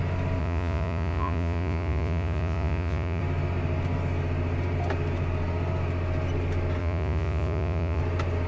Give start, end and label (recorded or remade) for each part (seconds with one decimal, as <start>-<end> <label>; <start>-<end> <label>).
0.0-0.4 recorded; 0.4-3.2 remade; 3.2-6.8 recorded; 6.8-8.0 remade; 8.0-8.5 recorded